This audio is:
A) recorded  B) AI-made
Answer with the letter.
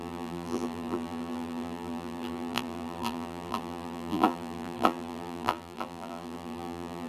B